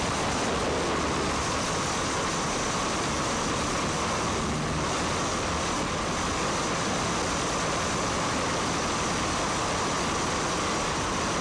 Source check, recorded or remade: recorded